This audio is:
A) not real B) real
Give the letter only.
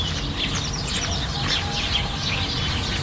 B